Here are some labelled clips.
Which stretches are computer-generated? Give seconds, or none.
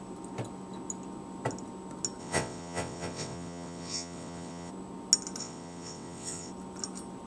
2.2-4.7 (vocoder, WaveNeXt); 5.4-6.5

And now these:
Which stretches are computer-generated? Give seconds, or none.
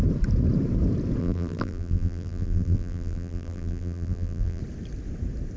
1.2-4.6 (vocoder, BigVGAN v2)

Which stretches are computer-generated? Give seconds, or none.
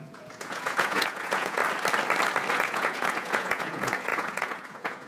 0.0-1.6 (vocoder, Vocos); 2.5-5.1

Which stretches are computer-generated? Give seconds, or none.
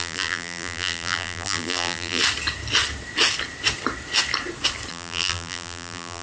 0.0-2.2 (vocoder, BigVGAN v2); 4.9-6.2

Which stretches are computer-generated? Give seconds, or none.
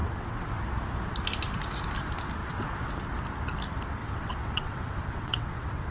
0.0-0.6 (vocoder, WaveNeXt); 2.4-2.9; 4.0-5.9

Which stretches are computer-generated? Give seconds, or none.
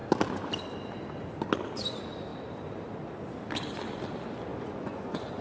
4.5-5.4 (vocoder, Vocos)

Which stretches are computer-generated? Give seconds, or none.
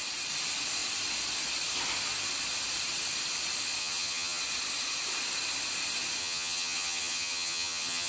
3.8-4.4 (vocoder, HiFi-GAN); 6.2-8.1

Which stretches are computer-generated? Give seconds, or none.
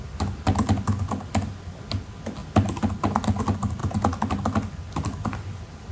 none